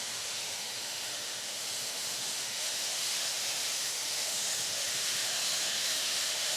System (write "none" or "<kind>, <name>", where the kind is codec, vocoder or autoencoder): autoencoder, DAC-VAE